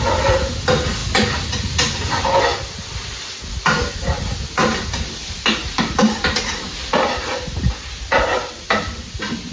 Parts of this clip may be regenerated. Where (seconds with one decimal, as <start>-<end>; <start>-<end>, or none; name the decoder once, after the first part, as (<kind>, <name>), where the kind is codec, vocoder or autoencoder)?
none